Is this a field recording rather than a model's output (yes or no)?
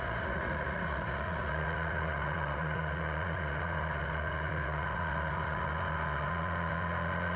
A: no